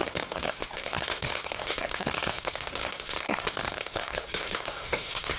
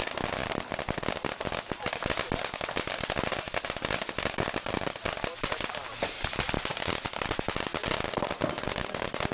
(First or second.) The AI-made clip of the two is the first